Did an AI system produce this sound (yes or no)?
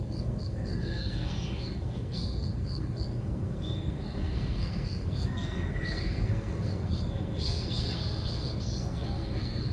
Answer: yes